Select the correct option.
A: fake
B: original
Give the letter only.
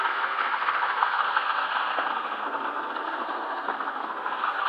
A